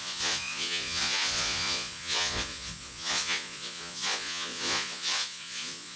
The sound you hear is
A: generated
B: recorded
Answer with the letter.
A